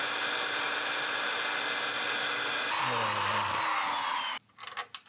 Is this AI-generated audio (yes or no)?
no